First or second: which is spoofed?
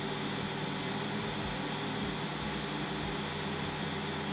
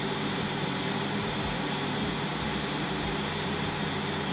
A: second